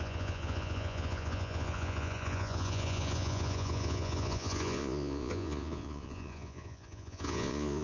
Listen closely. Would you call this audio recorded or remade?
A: remade